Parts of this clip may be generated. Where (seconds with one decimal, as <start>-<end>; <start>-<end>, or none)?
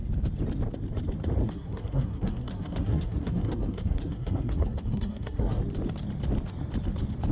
1.4-5.6